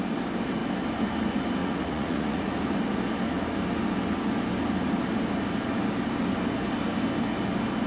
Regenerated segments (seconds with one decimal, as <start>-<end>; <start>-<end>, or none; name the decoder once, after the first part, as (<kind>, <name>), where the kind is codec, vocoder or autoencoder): 1.6-2.5 (vocoder, Vocos)